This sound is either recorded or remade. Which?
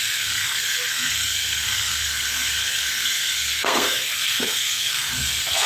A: remade